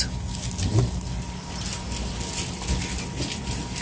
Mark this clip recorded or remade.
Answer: recorded